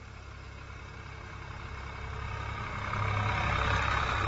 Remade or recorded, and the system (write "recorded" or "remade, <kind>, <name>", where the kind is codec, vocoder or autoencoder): recorded